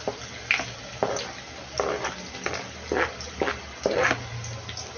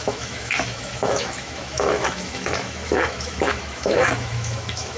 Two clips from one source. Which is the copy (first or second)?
second